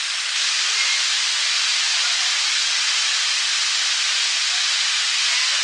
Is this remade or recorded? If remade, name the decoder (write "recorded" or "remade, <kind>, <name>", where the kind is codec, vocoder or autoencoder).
recorded